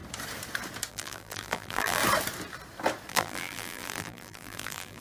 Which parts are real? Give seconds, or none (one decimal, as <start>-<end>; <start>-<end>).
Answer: 0.0-0.9; 2.0-3.1